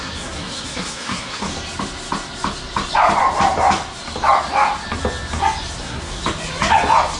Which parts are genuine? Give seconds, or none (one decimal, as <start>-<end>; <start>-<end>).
1.5-5.8; 6.2-7.2